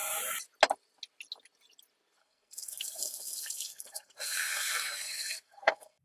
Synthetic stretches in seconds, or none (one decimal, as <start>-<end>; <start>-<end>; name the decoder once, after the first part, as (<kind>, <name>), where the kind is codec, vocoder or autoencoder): 2.2-6.0 (codec, SNAC)